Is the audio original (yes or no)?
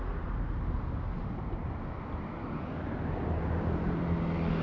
yes